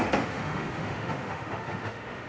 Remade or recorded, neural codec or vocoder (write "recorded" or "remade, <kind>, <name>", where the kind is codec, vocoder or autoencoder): remade, autoencoder, DAC-VAE